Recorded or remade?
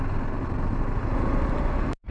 recorded